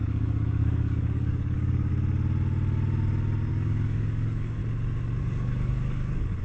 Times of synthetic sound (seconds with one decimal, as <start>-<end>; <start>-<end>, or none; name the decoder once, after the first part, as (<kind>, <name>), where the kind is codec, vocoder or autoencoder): 0.0-1.9 (codec, DAC); 3.5-4.6; 5.2-6.4

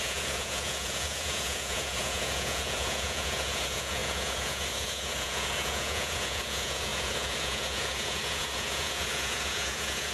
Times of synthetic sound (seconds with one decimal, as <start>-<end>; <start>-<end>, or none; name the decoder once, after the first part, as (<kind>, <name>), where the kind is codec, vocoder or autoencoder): 0.0-10.1 (vocoder, Vocos)

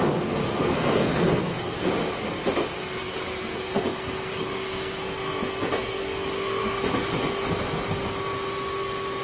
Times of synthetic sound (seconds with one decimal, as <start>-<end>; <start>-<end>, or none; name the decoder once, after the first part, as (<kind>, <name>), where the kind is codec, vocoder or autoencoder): 0.6-1.8 (codec, SNAC); 3.0-6.8